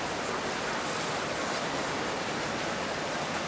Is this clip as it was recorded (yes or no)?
yes